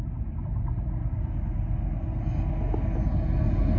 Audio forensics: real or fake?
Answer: real